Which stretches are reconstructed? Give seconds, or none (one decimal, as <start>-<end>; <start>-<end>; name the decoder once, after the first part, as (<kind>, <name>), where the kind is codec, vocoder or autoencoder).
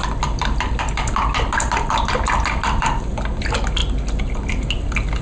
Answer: none